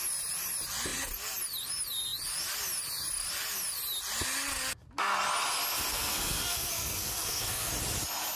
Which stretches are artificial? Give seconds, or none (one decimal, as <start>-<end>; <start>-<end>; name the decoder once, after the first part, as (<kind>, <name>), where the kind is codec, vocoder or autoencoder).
5.9-7.7 (codec, SNAC)